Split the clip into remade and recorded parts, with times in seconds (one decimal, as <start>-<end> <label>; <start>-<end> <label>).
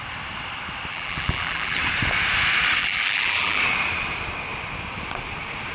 0.0-0.9 recorded; 0.9-1.8 remade; 1.8-2.8 recorded; 2.8-3.6 remade; 3.6-5.7 recorded